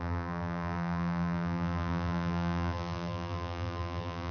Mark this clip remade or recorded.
remade